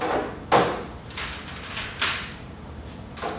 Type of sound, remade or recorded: recorded